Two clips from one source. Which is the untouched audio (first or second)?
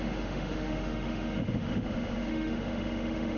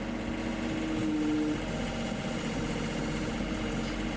second